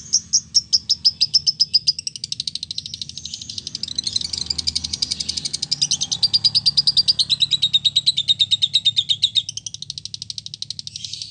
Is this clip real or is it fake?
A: real